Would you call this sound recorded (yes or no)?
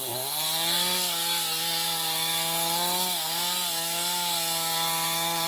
no